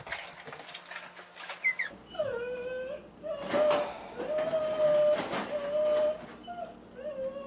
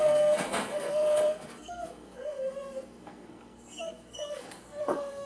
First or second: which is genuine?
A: first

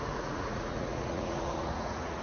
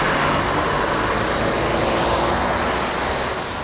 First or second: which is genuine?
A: second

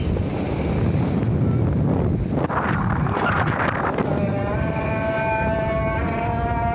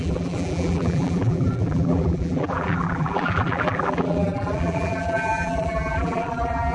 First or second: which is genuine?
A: first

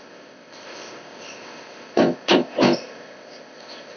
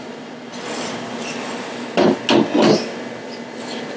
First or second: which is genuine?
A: second